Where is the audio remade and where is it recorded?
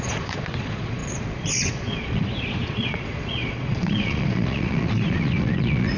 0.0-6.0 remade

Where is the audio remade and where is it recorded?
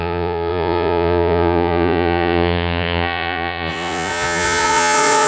0.0-5.3 remade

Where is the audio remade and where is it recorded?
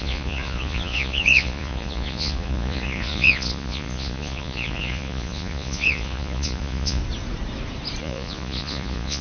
0.0-7.0 remade; 7.0-8.0 recorded; 8.0-9.2 remade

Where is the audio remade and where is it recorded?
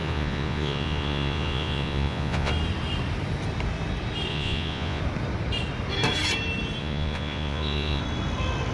0.0-2.5 remade; 2.5-4.3 recorded; 4.3-5.0 remade; 5.0-6.8 recorded; 6.8-8.0 remade; 8.0-8.7 recorded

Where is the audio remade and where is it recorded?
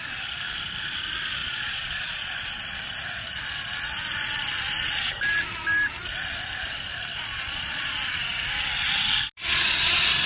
0.0-1.4 recorded; 1.4-2.8 remade; 2.8-7.1 recorded; 7.1-7.9 remade; 7.9-9.4 recorded; 9.4-10.3 remade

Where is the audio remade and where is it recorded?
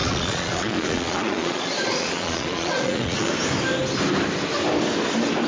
0.0-3.3 remade; 3.3-5.5 recorded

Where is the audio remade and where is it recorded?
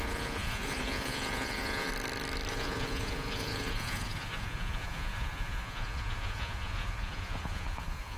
0.0-1.9 remade; 1.9-2.5 recorded; 2.5-8.2 remade